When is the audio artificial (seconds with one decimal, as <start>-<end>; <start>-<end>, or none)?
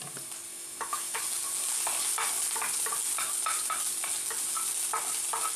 0.5-1.2